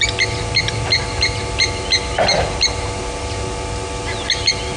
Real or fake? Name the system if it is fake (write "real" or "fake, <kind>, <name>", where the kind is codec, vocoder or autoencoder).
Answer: real